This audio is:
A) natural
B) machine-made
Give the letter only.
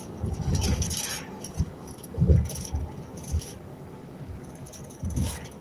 B